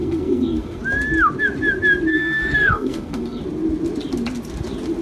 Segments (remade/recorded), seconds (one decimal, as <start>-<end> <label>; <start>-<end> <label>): 0.0-0.8 remade; 0.8-2.1 recorded; 2.1-3.4 remade; 3.4-5.0 recorded